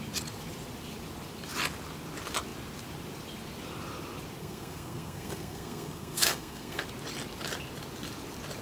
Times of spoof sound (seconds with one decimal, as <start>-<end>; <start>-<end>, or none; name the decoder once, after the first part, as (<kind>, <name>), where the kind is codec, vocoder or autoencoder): 4.4-6.8 (codec, SNAC)

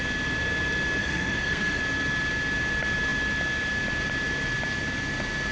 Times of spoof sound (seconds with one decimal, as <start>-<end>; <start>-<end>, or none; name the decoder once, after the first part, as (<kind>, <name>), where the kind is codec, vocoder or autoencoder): 1.0-1.8 (codec, SNAC)

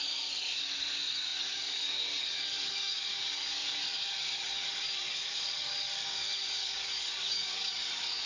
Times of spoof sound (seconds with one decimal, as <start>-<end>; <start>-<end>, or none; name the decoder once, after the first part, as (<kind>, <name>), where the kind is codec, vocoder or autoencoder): 0.0-8.3 (codec, DAC)

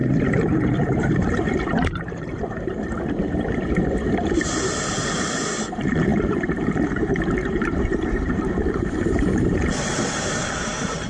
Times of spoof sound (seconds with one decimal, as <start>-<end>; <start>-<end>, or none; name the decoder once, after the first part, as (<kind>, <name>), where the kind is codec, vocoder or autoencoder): 0.0-11.1 (vocoder, BigVGAN v2)

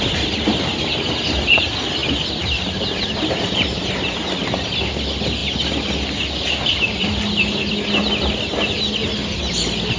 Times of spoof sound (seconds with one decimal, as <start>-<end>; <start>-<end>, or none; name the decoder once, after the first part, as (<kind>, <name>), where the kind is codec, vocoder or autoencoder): none

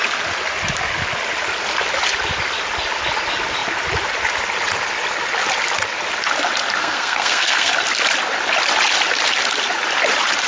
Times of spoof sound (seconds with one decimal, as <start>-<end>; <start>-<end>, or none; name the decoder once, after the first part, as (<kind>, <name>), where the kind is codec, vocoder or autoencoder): 6.8-7.7 (codec, SNAC)

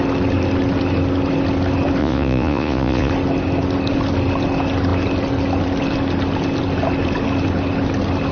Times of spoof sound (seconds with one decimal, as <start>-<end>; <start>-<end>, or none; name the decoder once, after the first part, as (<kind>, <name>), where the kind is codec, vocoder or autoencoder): 2.0-3.1 (vocoder, Vocos)

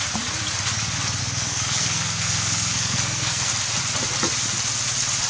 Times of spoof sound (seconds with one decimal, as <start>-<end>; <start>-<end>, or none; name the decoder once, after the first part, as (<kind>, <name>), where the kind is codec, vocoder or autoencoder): 1.2-3.5 (codec, SNAC)